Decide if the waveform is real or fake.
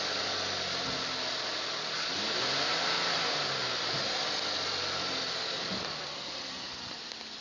real